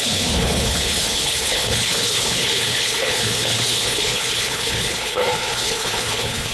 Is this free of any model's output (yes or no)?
no